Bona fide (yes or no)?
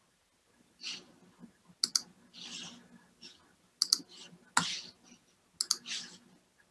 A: yes